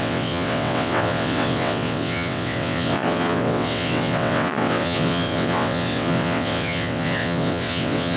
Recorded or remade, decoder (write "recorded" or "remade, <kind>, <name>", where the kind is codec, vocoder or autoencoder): remade, vocoder, WaveNeXt